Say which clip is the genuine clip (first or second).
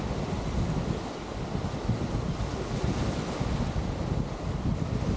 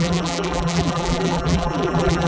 first